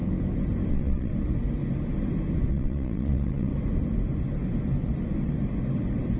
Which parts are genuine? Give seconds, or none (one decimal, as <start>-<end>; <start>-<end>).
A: 0.0-0.7; 1.1-2.5; 3.5-6.2